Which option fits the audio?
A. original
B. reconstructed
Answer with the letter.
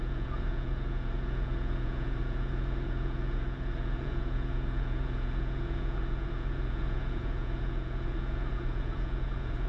B